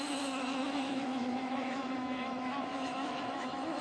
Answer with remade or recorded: remade